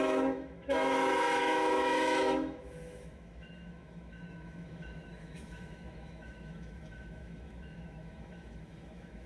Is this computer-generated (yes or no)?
yes